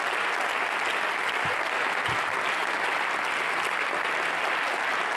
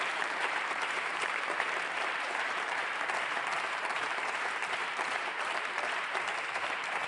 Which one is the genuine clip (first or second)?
first